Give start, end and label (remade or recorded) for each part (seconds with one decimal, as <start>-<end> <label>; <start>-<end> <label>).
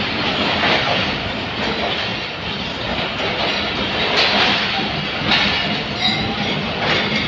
0.0-7.3 recorded